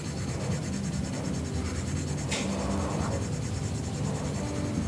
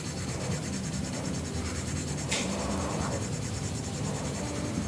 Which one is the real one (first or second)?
first